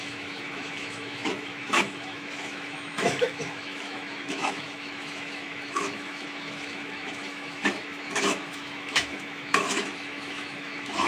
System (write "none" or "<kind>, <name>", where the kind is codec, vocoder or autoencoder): autoencoder, DAC-VAE